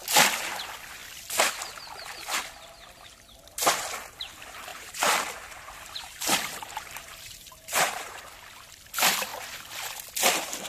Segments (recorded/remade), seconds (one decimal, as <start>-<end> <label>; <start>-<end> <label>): 0.0-4.7 recorded; 4.7-8.2 remade; 8.2-10.7 recorded